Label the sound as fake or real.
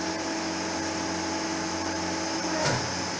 real